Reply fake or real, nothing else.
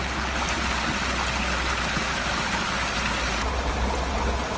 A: real